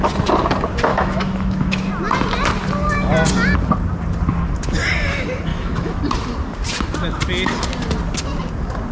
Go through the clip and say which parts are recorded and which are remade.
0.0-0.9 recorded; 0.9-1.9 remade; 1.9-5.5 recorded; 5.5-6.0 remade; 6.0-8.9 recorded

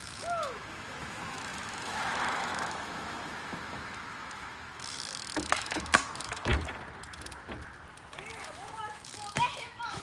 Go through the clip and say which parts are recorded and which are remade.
0.0-6.5 remade; 6.5-8.4 recorded; 8.4-10.0 remade

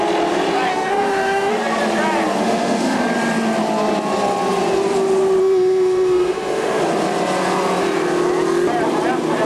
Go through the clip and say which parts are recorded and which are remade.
0.0-0.7 recorded; 0.7-1.5 remade; 1.5-2.4 recorded; 2.4-3.0 remade; 3.0-5.4 recorded; 5.4-6.8 remade; 6.8-9.4 recorded

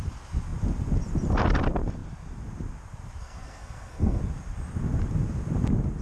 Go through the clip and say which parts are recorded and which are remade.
0.0-3.2 recorded; 3.2-4.2 remade; 4.2-6.0 recorded

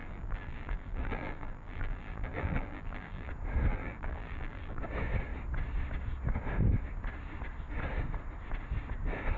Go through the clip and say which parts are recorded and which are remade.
0.0-3.3 remade; 3.3-3.7 recorded; 3.7-4.8 remade; 4.8-9.4 recorded

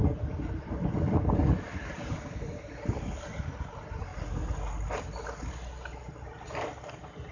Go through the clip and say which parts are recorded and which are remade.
0.0-7.3 recorded

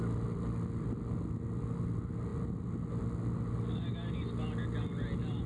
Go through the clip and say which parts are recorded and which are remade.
0.0-5.5 recorded

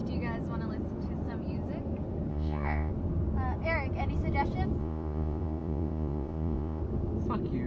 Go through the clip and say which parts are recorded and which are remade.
0.0-2.3 recorded; 2.3-2.9 remade; 2.9-4.8 recorded; 4.8-6.8 remade; 6.8-7.7 recorded